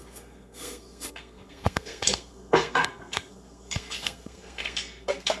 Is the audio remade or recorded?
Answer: remade